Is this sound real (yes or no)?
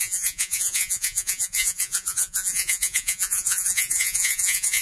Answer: no